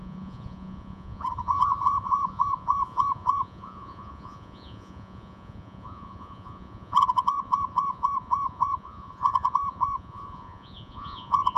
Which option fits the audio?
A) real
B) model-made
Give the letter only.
B